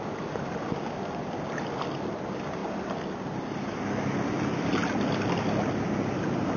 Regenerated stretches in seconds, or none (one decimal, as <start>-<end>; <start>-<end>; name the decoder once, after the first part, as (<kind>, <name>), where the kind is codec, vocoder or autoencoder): none